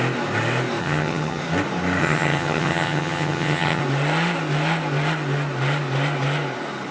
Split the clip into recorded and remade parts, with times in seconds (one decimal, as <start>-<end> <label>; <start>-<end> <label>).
0.0-0.8 recorded; 0.8-1.4 remade; 1.4-2.0 recorded; 2.0-3.8 remade; 3.8-6.9 recorded